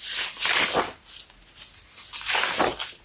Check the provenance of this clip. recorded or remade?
recorded